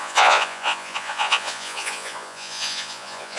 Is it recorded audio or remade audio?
remade